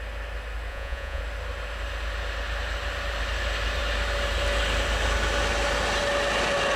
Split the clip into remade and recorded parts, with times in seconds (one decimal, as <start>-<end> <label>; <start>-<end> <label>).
0.0-0.7 recorded; 0.7-1.2 remade; 1.2-6.8 recorded